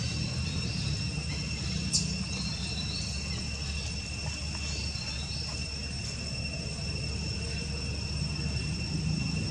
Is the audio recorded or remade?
recorded